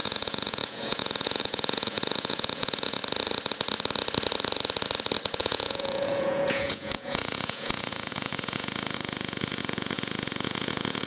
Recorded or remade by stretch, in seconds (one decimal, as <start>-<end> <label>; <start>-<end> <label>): 0.0-3.0 remade; 3.0-5.4 recorded; 5.4-11.1 remade